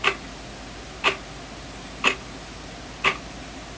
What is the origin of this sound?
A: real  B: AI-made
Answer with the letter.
A